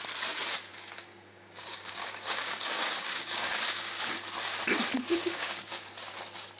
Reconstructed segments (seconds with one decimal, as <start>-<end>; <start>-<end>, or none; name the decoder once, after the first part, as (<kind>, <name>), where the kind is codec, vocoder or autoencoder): 0.7-4.1 (codec, DAC); 5.1-5.9